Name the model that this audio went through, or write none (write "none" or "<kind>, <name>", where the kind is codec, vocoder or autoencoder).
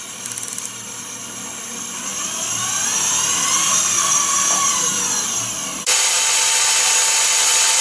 none